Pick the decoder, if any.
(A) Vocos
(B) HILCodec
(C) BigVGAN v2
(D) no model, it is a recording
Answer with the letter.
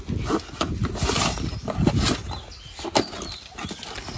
D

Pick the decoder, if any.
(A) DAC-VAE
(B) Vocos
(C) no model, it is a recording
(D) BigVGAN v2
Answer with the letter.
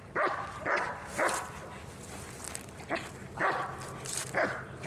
C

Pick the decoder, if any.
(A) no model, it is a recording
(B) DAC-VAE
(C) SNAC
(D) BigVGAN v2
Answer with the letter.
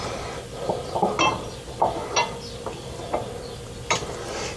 A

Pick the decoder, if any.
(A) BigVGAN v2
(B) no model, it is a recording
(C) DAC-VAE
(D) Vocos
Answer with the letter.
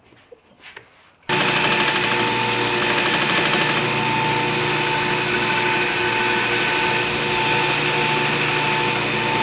B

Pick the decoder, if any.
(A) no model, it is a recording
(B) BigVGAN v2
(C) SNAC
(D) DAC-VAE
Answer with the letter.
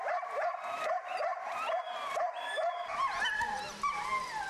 B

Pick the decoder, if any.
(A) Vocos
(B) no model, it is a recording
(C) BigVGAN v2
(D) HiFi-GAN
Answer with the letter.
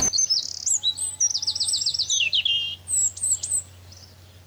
B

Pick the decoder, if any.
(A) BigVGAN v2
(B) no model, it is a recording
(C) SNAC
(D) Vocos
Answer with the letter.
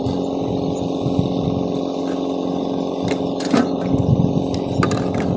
B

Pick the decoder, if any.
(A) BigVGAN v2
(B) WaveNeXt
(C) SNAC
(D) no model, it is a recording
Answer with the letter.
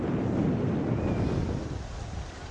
D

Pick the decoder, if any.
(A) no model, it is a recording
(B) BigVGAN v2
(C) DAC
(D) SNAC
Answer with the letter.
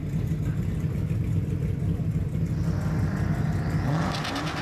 A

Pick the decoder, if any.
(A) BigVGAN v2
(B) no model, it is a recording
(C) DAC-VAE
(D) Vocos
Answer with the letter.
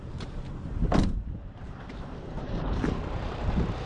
A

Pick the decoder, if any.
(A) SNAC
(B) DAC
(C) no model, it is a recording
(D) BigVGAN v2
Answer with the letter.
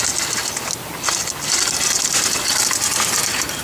C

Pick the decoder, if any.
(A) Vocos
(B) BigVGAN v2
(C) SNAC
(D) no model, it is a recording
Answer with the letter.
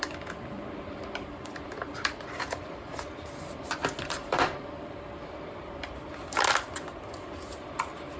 B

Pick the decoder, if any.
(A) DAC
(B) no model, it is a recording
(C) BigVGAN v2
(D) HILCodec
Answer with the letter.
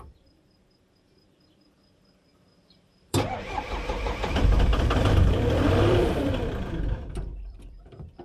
C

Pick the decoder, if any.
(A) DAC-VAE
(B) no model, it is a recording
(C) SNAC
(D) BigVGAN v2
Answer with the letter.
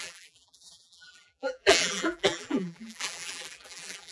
D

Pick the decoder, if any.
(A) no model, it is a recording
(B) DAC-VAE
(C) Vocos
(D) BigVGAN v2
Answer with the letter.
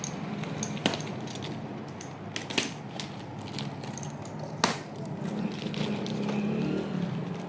A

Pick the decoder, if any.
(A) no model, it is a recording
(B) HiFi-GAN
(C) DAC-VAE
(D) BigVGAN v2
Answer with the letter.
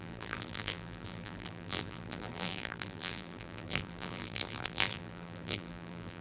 D